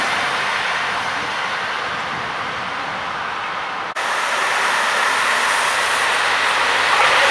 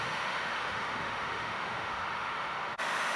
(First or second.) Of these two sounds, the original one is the first